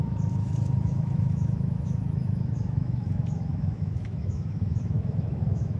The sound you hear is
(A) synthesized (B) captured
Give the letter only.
A